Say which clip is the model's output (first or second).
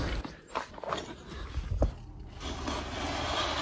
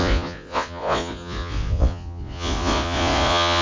second